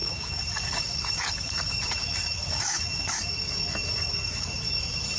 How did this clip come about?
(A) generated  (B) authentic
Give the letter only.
A